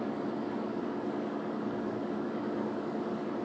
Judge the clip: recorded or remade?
remade